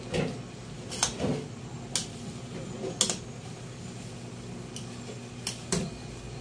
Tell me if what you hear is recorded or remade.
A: recorded